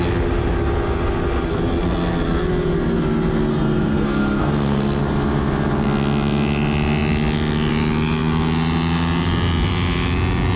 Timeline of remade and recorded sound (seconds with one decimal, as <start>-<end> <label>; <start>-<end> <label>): 0.0-3.5 recorded; 3.5-5.0 remade; 5.0-10.6 recorded